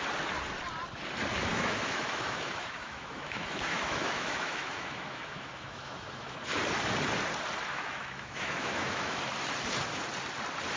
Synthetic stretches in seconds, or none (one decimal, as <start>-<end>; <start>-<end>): 1.5-6.4; 7.7-9.2